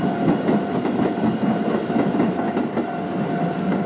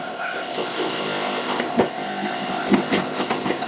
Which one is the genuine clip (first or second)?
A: first